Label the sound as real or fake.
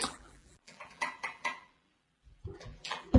fake